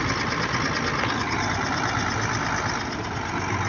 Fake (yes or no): no